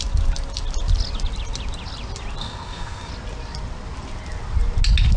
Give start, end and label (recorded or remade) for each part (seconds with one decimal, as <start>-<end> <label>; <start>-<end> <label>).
0.0-2.4 recorded; 2.4-3.1 remade; 3.1-5.2 recorded